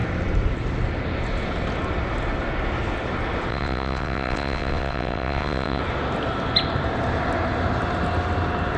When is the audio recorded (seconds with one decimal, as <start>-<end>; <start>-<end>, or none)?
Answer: 0.0-3.5; 5.8-8.8